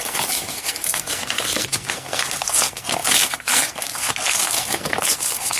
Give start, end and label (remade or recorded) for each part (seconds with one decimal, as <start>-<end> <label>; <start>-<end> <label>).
0.0-5.6 remade